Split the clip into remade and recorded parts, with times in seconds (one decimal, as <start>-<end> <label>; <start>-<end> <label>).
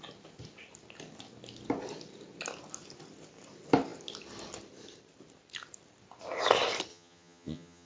0.0-6.9 recorded; 6.9-7.9 remade